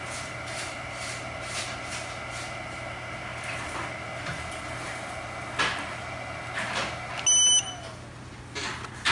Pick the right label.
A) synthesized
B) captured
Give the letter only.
B